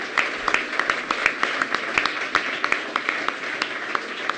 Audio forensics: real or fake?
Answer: real